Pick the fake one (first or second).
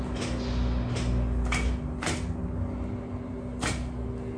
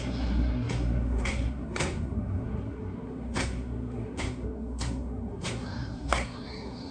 second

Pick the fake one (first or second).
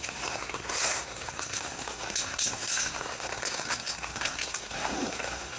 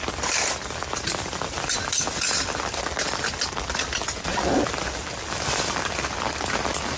first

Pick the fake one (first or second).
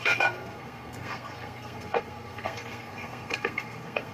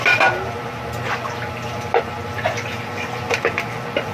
first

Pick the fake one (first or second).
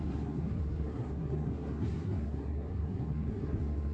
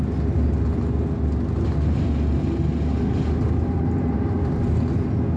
first